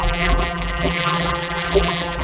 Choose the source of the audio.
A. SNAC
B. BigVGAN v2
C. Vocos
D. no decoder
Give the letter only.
B